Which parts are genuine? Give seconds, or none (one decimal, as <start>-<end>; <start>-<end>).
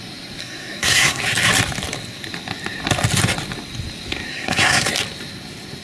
0.0-0.4; 1.2-4.3; 4.9-5.8